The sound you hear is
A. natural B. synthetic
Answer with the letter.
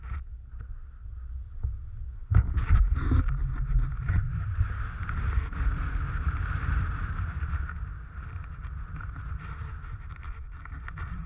A